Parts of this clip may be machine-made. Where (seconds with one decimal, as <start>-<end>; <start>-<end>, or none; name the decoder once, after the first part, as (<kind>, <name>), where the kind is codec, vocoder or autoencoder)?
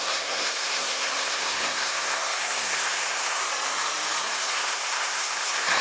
0.0-3.4 (codec, SNAC); 4.2-5.8